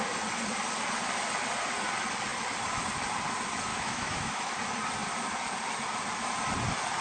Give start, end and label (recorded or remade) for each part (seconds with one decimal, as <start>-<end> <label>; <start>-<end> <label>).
0.0-3.7 recorded; 3.7-4.5 remade; 4.5-7.0 recorded